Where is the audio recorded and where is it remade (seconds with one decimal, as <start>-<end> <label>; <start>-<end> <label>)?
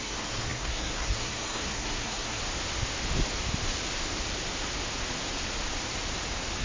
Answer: 0.0-2.4 remade; 2.4-6.6 recorded